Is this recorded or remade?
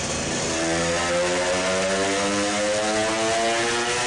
recorded